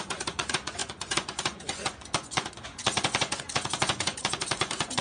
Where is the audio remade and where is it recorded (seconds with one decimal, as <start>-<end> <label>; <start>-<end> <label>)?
0.0-5.0 remade